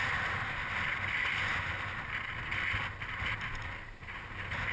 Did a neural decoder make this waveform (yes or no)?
no